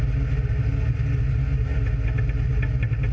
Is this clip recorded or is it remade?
recorded